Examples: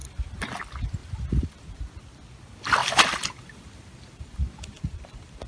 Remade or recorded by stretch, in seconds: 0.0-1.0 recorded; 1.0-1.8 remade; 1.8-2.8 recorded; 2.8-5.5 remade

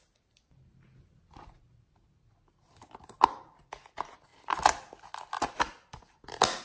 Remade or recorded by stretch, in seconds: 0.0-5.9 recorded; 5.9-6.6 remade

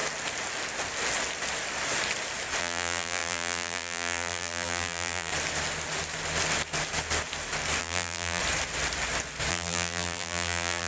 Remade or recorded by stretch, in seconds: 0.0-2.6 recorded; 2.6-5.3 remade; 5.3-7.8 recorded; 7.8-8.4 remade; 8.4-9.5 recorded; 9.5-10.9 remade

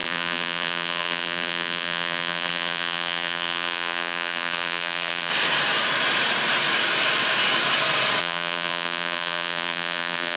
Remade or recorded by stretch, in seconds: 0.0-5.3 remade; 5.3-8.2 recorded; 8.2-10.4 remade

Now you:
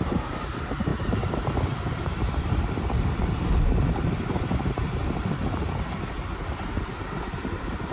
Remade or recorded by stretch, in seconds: 0.0-7.9 remade